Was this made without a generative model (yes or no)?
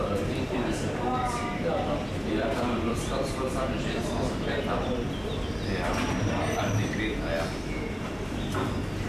no